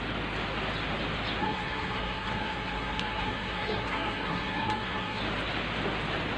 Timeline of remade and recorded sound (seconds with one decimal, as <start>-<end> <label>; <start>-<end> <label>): 0.0-1.4 recorded; 1.4-5.2 remade; 5.2-6.4 recorded